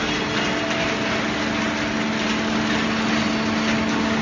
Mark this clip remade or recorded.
recorded